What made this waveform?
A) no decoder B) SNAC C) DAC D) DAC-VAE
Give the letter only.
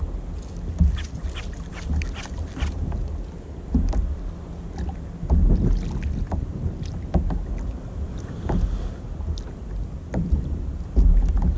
A